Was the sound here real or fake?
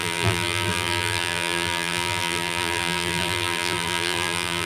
fake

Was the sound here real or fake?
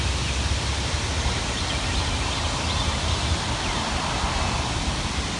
real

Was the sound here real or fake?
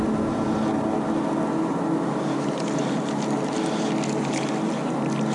real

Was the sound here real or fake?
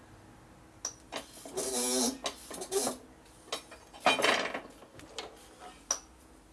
real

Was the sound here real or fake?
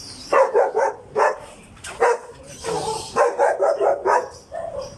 fake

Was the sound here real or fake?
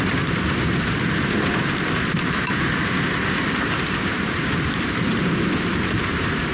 fake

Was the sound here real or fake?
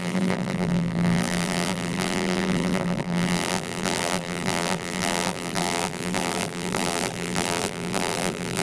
fake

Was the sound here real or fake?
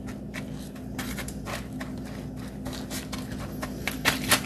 real